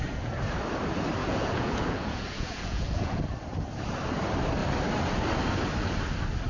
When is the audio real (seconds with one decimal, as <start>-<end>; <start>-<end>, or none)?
0.0-1.2; 3.2-6.5